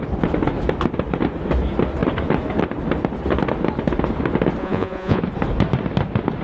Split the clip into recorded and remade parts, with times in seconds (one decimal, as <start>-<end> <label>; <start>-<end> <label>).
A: 0.0-4.6 recorded; 4.6-5.2 remade; 5.2-6.4 recorded